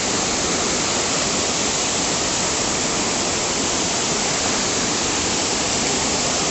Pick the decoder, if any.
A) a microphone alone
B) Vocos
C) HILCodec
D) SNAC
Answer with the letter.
A